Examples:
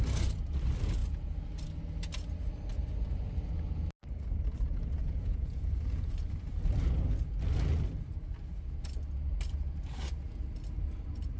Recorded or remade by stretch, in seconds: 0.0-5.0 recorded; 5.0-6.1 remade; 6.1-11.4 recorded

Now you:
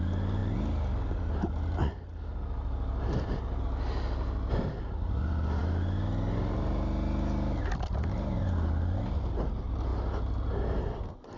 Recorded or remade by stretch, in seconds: 0.0-11.4 recorded